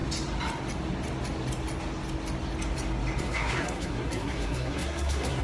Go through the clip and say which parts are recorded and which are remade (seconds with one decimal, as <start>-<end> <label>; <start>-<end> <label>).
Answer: 0.0-3.2 recorded; 3.2-5.4 remade